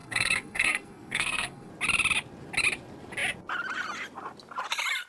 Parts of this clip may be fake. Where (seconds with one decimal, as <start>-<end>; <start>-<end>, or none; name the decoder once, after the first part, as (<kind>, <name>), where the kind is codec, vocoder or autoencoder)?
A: 0.0-1.7 (codec, SNAC)